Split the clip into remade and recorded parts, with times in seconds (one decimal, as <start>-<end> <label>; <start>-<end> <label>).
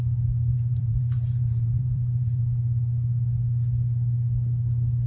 0.0-0.5 recorded; 0.5-2.4 remade; 2.4-5.1 recorded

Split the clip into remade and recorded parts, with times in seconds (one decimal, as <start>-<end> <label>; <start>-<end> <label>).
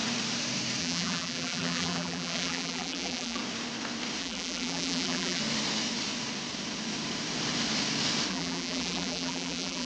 0.0-0.8 recorded; 0.8-3.4 remade; 3.4-4.2 recorded; 4.2-5.4 remade; 5.4-8.3 recorded; 8.3-9.8 remade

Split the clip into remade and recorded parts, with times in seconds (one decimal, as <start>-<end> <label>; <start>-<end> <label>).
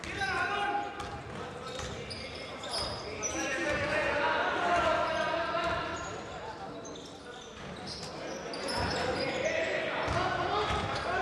0.0-5.9 recorded; 5.9-7.2 remade; 7.2-11.2 recorded